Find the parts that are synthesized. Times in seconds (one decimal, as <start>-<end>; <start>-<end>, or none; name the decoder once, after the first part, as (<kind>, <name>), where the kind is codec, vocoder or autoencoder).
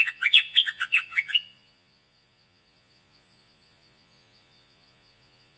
0.0-5.6 (vocoder, Vocos)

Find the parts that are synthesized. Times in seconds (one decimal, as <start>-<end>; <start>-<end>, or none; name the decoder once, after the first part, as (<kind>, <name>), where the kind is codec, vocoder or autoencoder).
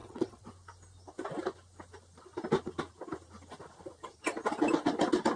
0.0-0.5 (vocoder, WaveNeXt)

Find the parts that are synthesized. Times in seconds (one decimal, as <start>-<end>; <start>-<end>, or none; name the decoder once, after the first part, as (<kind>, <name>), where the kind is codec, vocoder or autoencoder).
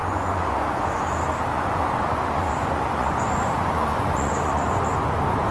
0.0-1.0 (vocoder, Vocos); 1.5-4.8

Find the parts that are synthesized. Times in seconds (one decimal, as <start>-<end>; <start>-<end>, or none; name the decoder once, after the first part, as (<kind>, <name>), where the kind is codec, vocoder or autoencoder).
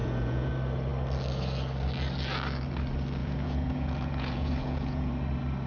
0.0-0.5 (vocoder, Vocos); 3.2-5.1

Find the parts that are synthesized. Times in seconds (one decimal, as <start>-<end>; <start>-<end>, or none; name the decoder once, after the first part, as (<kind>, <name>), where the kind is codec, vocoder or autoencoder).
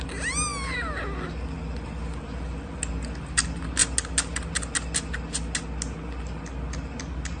none